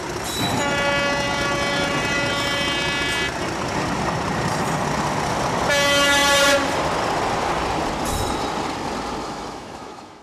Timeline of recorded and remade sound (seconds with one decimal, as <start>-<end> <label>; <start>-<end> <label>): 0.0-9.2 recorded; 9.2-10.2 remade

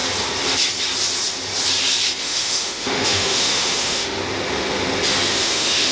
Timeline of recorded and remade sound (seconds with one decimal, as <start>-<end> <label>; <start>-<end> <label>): 0.0-2.2 recorded; 2.2-4.2 remade; 4.2-5.3 recorded; 5.3-5.9 remade

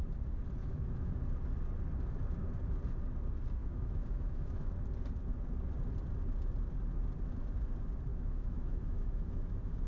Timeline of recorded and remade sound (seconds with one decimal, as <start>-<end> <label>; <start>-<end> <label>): 0.0-0.6 recorded; 0.6-1.1 remade; 1.1-3.6 recorded; 3.6-4.7 remade; 4.7-8.1 recorded; 8.1-9.9 remade

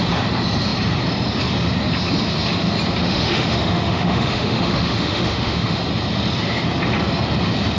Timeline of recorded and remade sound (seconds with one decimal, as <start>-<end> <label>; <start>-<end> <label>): 0.0-3.0 recorded; 3.0-5.8 remade; 5.8-7.8 recorded

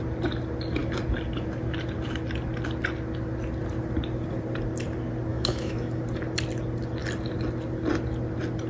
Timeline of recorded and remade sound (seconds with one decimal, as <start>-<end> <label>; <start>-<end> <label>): 0.0-5.3 recorded; 5.3-6.0 remade; 6.0-8.7 recorded

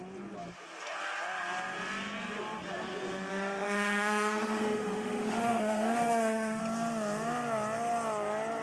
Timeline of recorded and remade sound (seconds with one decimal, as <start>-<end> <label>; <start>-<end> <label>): 0.0-3.3 recorded; 3.3-6.6 remade; 6.6-8.6 recorded

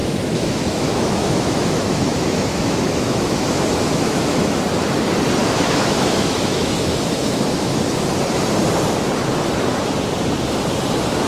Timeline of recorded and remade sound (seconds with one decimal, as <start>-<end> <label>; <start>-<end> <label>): 0.0-4.6 remade; 4.6-5.4 recorded; 5.4-7.8 remade; 7.8-11.3 recorded

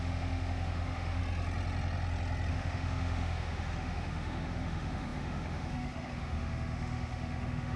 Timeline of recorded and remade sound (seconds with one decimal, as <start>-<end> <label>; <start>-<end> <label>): 0.0-1.2 remade; 1.2-2.5 recorded; 2.5-7.8 remade